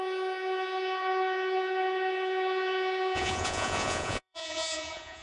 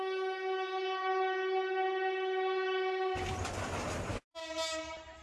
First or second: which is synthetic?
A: first